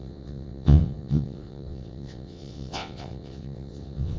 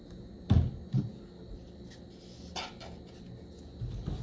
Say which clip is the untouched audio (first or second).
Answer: second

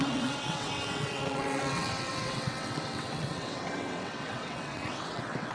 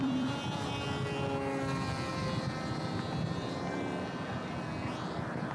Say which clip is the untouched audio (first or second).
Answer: second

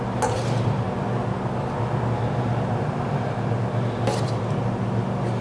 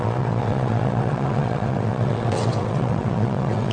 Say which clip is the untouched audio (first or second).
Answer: first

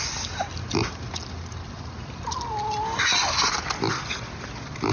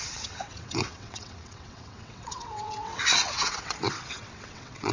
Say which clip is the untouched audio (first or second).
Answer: first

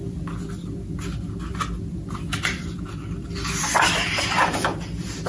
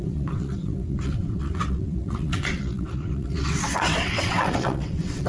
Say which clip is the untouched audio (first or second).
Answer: first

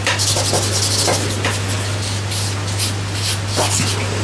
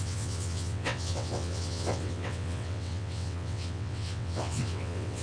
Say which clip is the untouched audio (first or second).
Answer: first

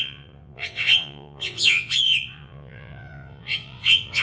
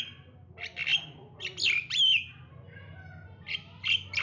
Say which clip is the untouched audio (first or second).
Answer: second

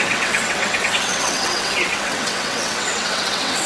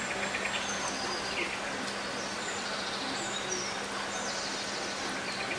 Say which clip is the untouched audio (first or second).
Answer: second